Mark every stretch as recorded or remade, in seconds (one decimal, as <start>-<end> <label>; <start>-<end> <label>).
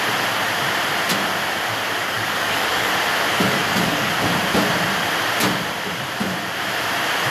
0.0-2.0 recorded; 2.0-2.9 remade; 2.9-3.3 recorded; 3.3-4.1 remade; 4.1-7.3 recorded